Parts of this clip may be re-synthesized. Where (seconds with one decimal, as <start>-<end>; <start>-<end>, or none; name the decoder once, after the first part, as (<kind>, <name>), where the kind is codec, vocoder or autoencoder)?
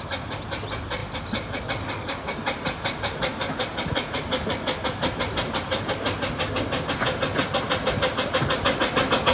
1.0-1.6 (vocoder, BigVGAN v2)